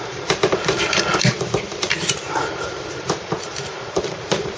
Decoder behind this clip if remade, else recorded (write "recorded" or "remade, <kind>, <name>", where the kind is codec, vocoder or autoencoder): remade, vocoder, BigVGAN v2